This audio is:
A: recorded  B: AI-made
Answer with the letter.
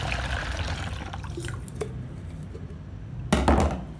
A